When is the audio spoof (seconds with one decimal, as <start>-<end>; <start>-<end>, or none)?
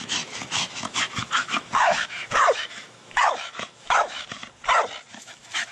0.0-4.4; 5.1-5.7